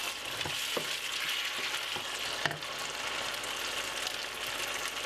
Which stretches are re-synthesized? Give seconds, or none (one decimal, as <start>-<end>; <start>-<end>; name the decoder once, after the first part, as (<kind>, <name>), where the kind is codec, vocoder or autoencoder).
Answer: none